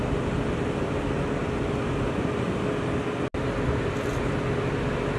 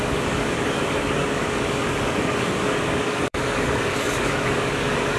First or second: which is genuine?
first